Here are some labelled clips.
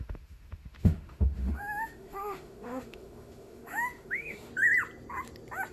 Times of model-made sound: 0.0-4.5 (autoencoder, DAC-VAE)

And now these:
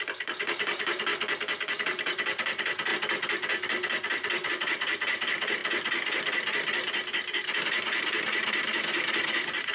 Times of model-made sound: 0.0-1.1 (vocoder, BigVGAN v2); 1.8-2.9; 4.5-5.6; 7.6-9.7

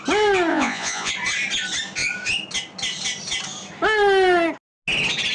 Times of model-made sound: 0.5-1.1 (vocoder, Vocos)

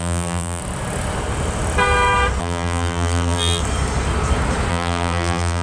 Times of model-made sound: 0.0-0.6 (vocoder, BigVGAN v2); 2.4-3.6; 4.7-5.6

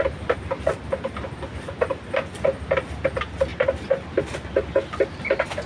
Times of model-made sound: 3.5-4.2 (vocoder, BigVGAN v2)